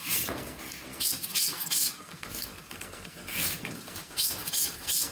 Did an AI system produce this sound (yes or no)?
yes